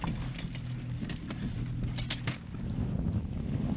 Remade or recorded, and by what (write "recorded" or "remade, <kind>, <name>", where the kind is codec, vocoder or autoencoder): recorded